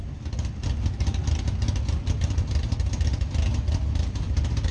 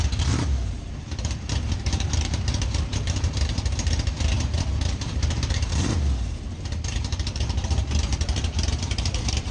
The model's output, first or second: second